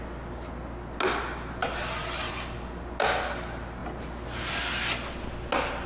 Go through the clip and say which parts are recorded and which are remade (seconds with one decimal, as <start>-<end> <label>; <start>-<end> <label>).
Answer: 0.0-5.9 recorded